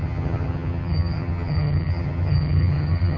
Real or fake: fake